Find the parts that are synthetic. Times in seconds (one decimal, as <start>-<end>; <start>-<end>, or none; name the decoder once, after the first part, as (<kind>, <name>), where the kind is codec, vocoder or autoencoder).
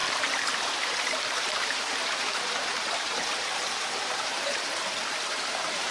0.0-5.9 (vocoder, BigVGAN v2)